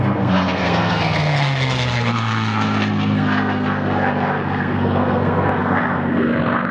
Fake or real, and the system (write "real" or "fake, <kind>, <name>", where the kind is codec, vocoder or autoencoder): fake, codec, SNAC